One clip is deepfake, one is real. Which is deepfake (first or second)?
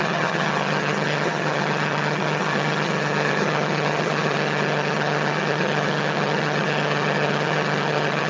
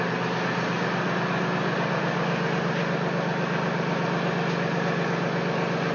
first